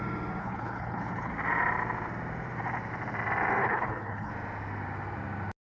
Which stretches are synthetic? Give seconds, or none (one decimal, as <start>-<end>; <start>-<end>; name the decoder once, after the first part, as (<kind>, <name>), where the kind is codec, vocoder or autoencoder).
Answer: 0.4-1.3 (codec, HILCodec); 3.6-4.3